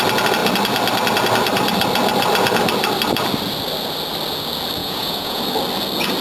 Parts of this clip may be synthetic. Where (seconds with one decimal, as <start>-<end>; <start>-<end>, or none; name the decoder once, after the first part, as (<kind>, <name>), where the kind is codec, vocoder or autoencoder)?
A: 4.8-5.4 (vocoder, Vocos)

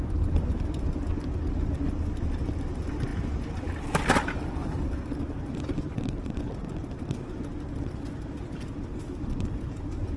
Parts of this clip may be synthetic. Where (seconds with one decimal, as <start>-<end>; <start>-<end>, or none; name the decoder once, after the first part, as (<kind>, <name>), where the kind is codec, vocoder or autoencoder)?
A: none